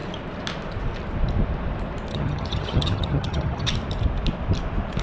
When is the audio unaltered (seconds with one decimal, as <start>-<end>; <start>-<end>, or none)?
0.0-2.1; 3.7-5.0